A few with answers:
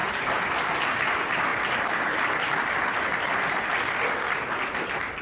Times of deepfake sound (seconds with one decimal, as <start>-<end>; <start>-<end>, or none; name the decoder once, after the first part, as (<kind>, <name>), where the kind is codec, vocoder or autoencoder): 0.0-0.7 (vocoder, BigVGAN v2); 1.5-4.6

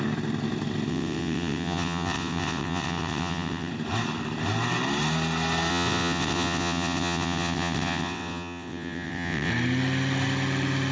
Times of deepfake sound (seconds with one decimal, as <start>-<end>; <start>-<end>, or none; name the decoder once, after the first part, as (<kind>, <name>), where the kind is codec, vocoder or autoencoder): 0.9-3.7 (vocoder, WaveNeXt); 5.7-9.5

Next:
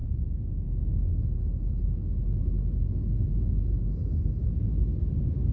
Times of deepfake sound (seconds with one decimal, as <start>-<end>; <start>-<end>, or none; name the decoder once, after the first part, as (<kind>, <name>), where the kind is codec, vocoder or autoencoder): 1.1-1.8 (codec, HILCodec); 3.8-4.4

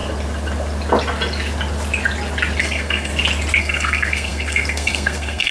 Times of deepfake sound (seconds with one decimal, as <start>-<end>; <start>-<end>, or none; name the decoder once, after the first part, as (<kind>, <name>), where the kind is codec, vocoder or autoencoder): 2.6-3.1 (codec, SNAC); 3.6-5.5